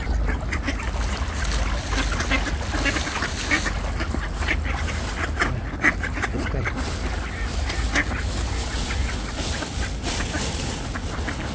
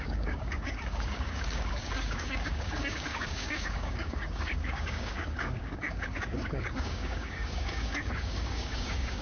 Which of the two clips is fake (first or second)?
second